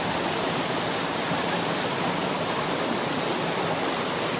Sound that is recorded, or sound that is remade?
recorded